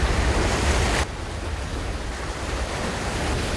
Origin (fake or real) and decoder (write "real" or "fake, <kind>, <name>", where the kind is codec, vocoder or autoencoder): real